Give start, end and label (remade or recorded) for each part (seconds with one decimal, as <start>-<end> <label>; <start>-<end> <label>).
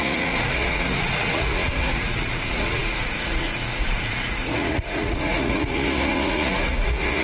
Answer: 0.0-7.2 remade